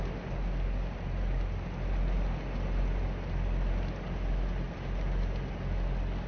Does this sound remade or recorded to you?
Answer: recorded